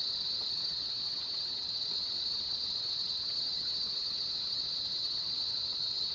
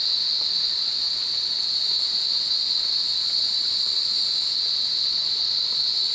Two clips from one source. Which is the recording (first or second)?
second